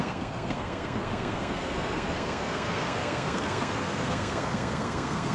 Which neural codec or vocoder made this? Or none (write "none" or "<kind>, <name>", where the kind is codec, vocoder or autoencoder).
codec, SNAC